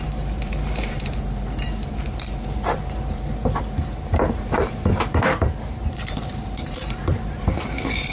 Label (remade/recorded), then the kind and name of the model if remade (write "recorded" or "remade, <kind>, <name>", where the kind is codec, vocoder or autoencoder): remade, vocoder, BigVGAN v2